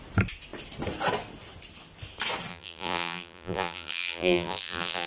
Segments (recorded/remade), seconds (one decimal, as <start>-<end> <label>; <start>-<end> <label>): 0.0-2.5 recorded; 2.5-5.1 remade